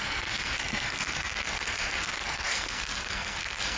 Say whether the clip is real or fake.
fake